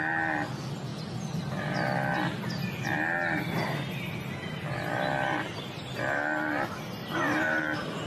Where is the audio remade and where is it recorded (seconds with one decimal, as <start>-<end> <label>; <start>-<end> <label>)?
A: 0.0-7.0 recorded; 7.0-7.6 remade; 7.6-8.1 recorded